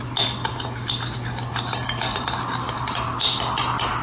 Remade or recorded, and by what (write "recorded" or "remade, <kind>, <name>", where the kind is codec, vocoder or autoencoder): recorded